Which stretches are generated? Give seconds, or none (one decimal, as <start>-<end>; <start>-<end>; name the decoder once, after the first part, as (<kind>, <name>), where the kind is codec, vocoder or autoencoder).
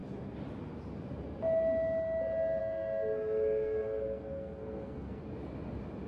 2.6-5.2 (codec, SNAC)